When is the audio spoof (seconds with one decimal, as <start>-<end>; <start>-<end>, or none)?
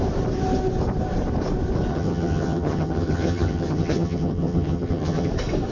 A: 1.9-5.3